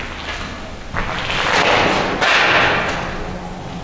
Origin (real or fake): real